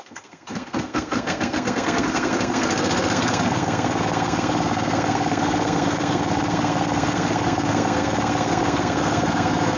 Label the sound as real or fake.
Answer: fake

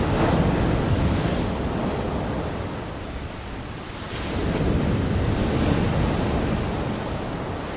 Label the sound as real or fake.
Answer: real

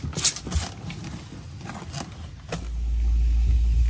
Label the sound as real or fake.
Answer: real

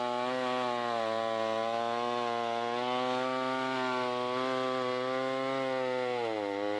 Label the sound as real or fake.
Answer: real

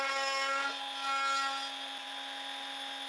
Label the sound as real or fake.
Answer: real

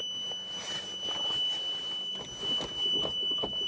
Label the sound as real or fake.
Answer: real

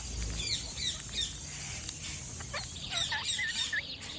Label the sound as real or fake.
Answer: real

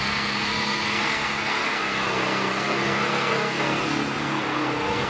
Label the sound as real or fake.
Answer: fake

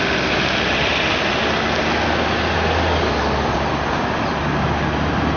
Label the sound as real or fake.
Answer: real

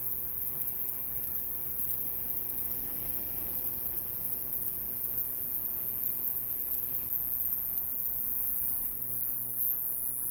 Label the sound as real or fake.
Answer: real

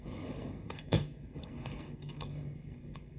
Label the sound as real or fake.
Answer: fake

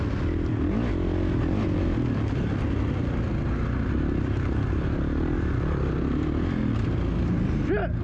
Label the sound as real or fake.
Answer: real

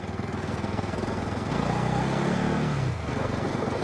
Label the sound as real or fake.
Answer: fake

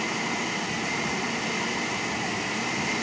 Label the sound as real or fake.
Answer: real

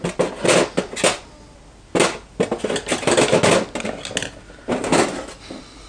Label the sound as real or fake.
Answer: real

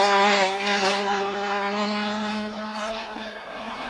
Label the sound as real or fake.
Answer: fake